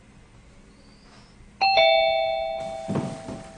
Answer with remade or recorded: recorded